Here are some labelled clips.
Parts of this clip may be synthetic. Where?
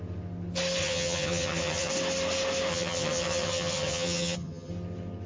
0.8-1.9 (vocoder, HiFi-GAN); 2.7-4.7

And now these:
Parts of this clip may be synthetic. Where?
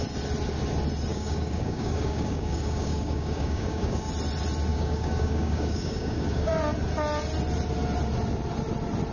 1.1-4.1 (codec, DAC); 4.7-6.5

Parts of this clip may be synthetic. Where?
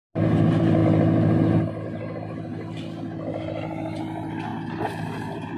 none